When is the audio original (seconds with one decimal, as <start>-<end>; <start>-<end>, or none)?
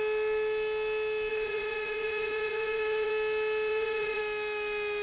0.0-1.3; 3.1-3.7; 4.2-5.0